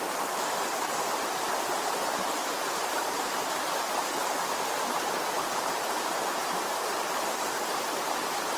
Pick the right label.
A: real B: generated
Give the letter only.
B